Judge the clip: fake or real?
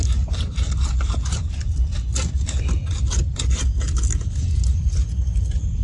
real